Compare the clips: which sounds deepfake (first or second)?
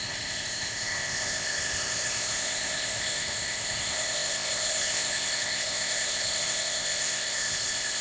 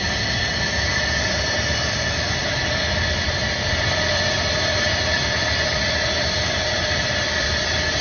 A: first